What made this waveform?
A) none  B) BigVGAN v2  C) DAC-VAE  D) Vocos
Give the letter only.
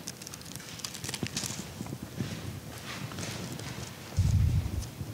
A